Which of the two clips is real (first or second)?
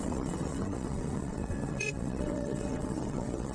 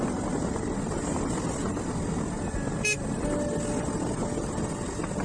second